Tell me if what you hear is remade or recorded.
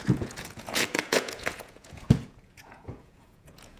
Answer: remade